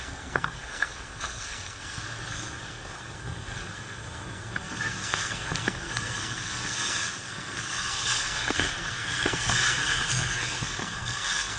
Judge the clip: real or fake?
fake